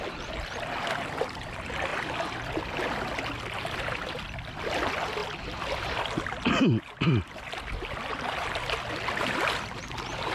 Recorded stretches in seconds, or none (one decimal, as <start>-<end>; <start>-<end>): 0.0-10.3